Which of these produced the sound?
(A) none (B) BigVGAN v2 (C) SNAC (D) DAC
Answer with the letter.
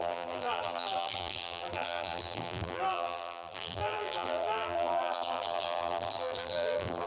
B